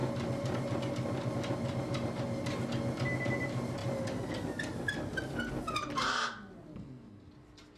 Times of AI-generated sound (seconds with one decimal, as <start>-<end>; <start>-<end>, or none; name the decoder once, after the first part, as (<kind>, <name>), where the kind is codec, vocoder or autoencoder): 6.7-7.3 (codec, SNAC)